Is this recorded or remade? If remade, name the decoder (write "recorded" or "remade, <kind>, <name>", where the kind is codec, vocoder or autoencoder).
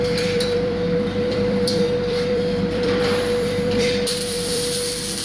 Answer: remade, vocoder, BigVGAN v2